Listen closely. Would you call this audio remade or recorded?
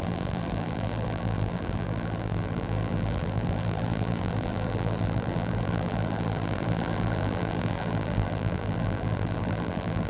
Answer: remade